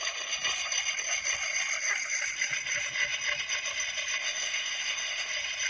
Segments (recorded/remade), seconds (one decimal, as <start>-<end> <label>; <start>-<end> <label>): 0.0-4.2 recorded; 4.2-5.3 remade; 5.3-5.7 recorded